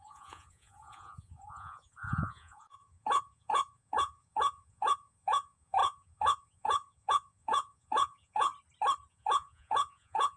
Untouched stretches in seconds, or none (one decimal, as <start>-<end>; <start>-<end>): 8.5-9.1